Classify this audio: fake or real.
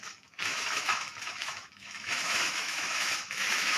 fake